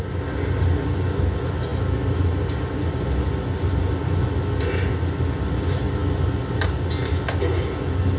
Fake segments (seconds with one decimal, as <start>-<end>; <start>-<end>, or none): none